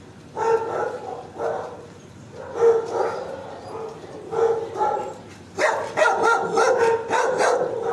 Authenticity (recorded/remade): recorded